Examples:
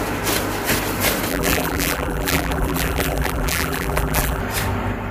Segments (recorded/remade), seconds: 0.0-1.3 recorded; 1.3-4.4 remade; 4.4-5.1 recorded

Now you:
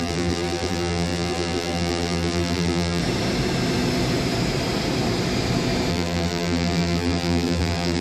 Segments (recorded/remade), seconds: 0.0-3.0 remade; 3.0-5.9 recorded; 5.9-8.0 remade